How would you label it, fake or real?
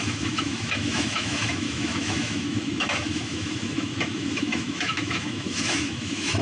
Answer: fake